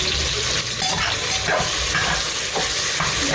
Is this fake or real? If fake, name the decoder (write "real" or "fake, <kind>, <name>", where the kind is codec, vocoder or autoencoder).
real